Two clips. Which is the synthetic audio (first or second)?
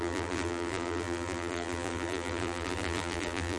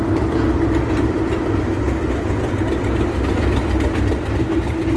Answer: first